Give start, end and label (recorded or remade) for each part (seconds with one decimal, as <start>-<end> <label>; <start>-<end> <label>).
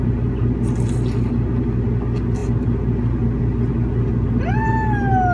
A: 0.0-5.3 recorded